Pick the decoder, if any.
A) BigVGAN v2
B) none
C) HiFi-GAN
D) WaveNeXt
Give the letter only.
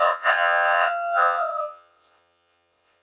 D